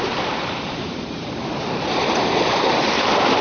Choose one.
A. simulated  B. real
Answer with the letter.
A